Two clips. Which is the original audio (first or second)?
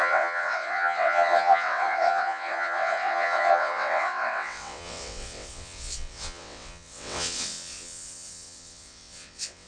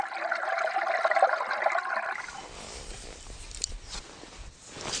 second